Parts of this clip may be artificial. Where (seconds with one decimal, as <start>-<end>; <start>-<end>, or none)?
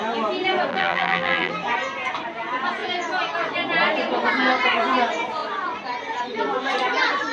0.7-1.5